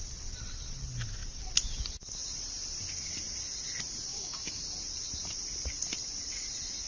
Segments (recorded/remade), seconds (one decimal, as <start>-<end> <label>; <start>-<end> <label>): 0.0-4.1 recorded; 4.1-4.6 remade; 4.6-6.9 recorded